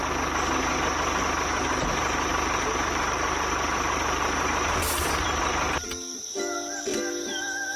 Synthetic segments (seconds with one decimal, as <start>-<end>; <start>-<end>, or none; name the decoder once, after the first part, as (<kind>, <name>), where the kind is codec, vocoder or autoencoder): 2.3-5.0 (vocoder, BigVGAN v2); 6.9-7.8